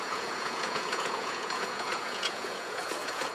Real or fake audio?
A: fake